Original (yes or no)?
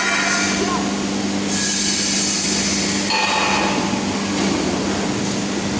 yes